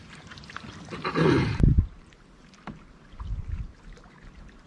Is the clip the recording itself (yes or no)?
no